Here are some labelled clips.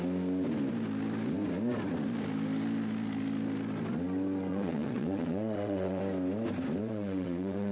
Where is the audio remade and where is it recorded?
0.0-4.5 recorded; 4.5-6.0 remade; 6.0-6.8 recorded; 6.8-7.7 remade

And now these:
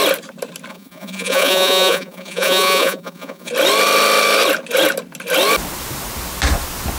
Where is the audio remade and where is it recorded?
0.0-0.7 recorded; 0.7-3.5 remade; 3.5-7.0 recorded

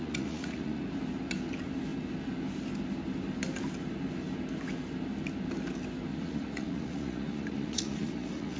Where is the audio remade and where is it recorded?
0.0-0.8 remade; 0.8-6.1 recorded; 6.1-8.6 remade

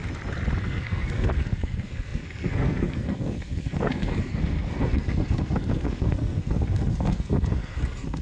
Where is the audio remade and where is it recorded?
0.0-0.6 recorded; 0.6-8.2 remade

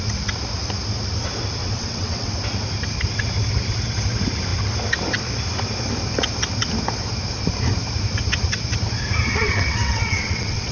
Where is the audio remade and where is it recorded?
0.0-1.6 recorded; 1.6-2.3 remade; 2.3-9.4 recorded; 9.4-10.7 remade

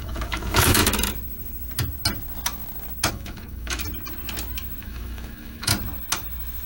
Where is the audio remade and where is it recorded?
0.0-0.8 remade; 0.8-3.1 recorded; 3.1-3.8 remade; 3.8-4.8 recorded; 4.8-5.7 remade; 5.7-6.7 recorded

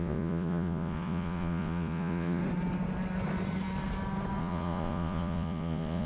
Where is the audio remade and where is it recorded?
0.0-2.4 remade; 2.4-4.4 recorded; 4.4-6.1 remade

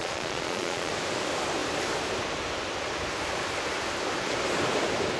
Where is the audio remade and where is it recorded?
0.0-0.9 remade; 0.9-5.2 recorded